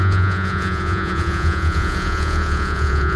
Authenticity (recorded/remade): remade